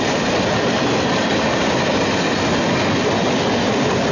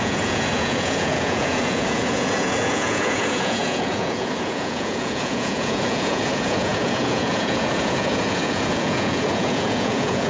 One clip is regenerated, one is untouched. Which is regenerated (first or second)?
second